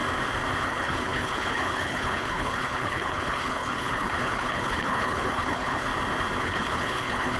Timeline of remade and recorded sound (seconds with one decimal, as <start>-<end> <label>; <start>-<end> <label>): 0.0-0.6 recorded; 0.6-5.9 remade; 5.9-6.4 recorded; 6.4-7.4 remade